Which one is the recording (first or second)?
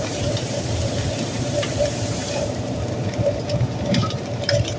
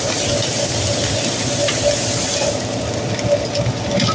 second